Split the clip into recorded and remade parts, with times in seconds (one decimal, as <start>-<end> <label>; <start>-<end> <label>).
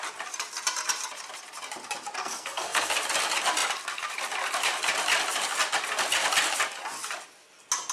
0.0-2.2 recorded; 2.2-2.9 remade; 2.9-7.9 recorded